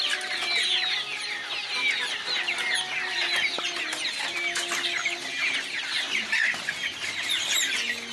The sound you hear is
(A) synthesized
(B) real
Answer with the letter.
B